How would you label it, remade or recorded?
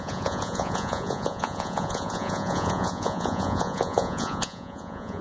remade